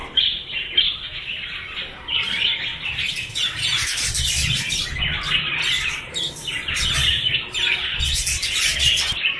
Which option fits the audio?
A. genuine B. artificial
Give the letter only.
A